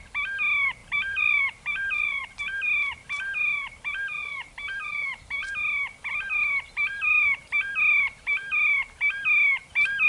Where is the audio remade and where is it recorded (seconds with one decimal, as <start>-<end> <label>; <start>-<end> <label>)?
0.0-0.8 recorded; 0.8-2.4 remade; 2.4-4.2 recorded; 4.2-4.8 remade; 4.8-10.1 recorded